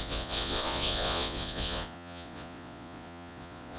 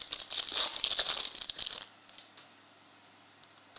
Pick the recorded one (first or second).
second